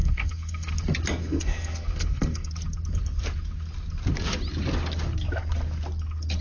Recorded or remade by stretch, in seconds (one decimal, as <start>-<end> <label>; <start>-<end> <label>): 0.0-0.7 remade; 0.7-1.2 recorded; 1.2-2.5 remade; 2.5-6.4 recorded

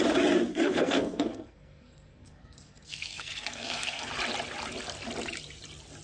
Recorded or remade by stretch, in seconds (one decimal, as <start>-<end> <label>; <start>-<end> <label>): 0.0-0.5 recorded; 0.5-4.1 remade; 4.1-6.0 recorded

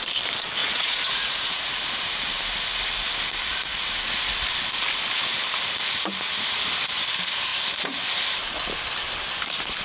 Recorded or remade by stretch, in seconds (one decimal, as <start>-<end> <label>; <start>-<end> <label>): 0.0-0.6 recorded; 0.6-1.6 remade; 1.6-9.8 recorded